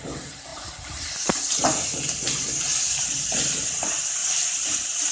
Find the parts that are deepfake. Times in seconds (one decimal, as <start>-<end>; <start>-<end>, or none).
4.2-5.1